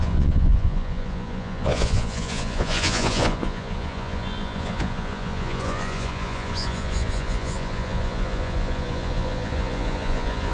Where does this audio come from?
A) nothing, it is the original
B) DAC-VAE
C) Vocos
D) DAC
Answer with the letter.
C